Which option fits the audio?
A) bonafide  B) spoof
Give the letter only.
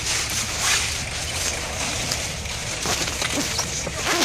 A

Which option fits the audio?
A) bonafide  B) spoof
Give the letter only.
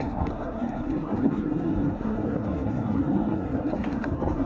B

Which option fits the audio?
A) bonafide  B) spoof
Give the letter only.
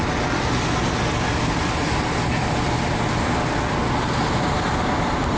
A